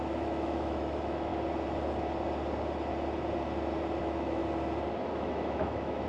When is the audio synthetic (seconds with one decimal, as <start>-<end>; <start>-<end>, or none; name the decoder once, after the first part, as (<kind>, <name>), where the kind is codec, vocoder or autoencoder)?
0.0-1.3 (autoencoder, DAC-VAE); 4.0-4.4; 5.1-6.1